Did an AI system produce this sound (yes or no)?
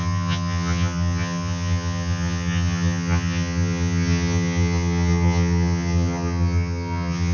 yes